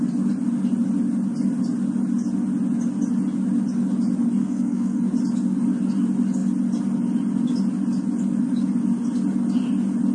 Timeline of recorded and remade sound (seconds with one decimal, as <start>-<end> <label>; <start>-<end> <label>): 0.0-4.4 recorded; 4.4-5.0 remade; 5.0-10.1 recorded